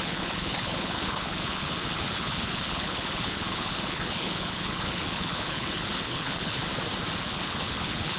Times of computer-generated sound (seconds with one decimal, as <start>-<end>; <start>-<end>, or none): 0.0-6.6; 7.2-8.2